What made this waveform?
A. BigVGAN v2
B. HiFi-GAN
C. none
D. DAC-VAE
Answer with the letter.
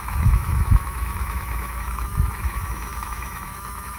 D